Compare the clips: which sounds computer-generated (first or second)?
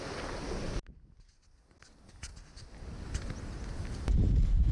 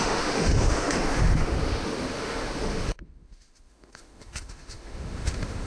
second